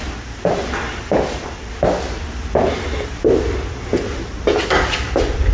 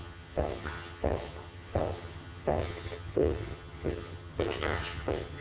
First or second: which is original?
first